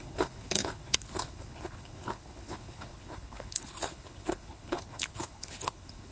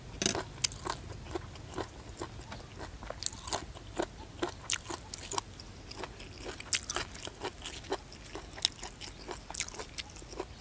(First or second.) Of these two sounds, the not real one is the first